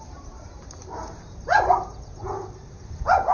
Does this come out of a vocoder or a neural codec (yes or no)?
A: yes